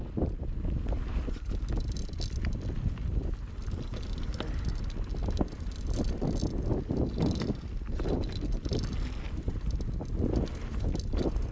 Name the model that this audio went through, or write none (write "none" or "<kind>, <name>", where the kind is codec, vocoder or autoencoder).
none